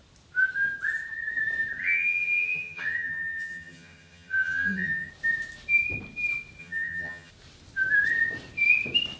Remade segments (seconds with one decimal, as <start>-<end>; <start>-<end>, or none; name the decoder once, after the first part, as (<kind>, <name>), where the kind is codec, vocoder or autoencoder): 1.8-5.1 (vocoder, HiFi-GAN); 6.6-7.3

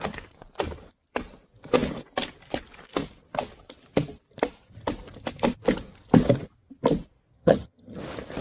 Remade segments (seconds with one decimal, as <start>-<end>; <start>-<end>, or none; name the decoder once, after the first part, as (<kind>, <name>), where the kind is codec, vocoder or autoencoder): 7.3-8.0 (vocoder, HiFi-GAN)

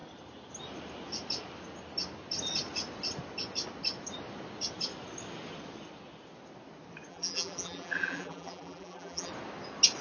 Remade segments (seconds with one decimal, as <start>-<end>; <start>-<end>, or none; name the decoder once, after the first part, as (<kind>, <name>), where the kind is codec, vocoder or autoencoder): 7.1-9.3 (vocoder, BigVGAN v2)